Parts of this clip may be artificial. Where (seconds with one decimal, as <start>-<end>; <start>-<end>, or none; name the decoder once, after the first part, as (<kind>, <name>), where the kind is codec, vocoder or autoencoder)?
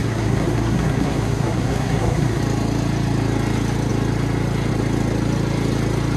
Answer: 0.0-2.4 (codec, SNAC)